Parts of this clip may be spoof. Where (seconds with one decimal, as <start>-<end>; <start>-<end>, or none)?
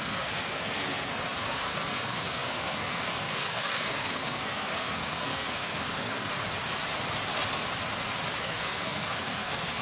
0.0-6.3; 8.4-9.8